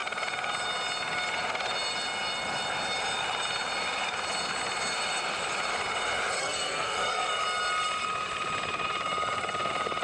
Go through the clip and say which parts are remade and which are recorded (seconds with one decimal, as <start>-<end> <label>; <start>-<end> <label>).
0.0-6.4 recorded; 6.4-7.3 remade; 7.3-10.0 recorded